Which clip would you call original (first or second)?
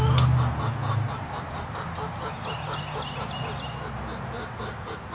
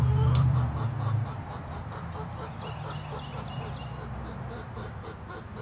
first